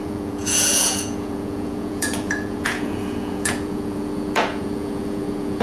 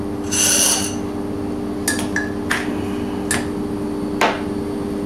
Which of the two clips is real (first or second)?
second